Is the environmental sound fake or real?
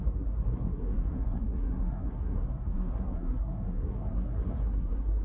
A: fake